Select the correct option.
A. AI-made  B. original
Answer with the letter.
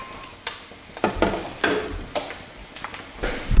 B